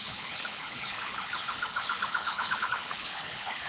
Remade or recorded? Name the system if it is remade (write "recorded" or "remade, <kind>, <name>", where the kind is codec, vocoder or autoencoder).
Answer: remade, codec, HILCodec